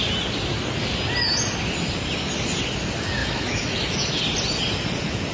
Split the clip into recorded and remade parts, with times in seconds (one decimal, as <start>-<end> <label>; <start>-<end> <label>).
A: 0.0-3.2 recorded; 3.2-4.2 remade; 4.2-5.3 recorded